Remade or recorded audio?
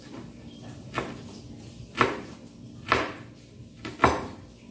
recorded